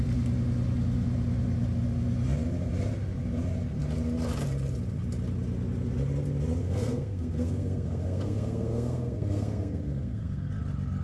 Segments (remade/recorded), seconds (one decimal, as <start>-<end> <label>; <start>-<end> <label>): 0.0-6.6 recorded; 6.6-10.5 remade; 10.5-11.0 recorded